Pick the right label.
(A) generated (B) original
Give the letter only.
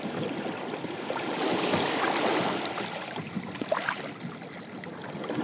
B